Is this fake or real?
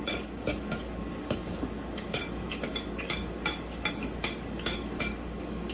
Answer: fake